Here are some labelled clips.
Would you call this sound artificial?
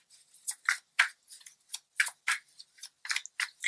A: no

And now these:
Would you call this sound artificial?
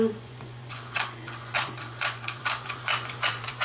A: yes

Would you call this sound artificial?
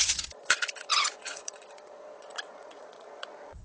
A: yes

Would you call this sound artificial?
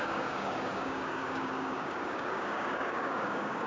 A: yes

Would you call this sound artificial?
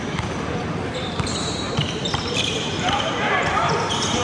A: yes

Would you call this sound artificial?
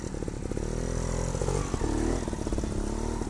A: no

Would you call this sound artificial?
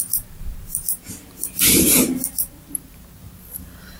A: yes